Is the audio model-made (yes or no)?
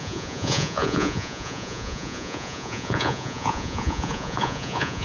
yes